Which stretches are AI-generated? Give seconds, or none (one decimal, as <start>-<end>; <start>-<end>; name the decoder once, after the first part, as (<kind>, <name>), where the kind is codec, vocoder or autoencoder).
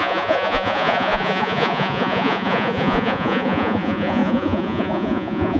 0.0-5.6 (vocoder, Vocos)